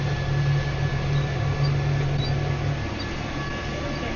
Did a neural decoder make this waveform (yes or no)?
no